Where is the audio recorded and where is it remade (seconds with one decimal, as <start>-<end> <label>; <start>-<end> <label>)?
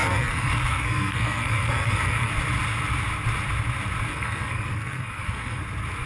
0.0-2.3 remade; 2.3-4.1 recorded; 4.1-5.6 remade; 5.6-6.1 recorded